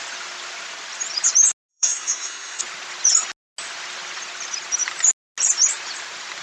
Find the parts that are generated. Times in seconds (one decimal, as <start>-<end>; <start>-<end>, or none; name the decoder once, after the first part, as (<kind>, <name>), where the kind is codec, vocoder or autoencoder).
1.7-2.6 (codec, SNAC)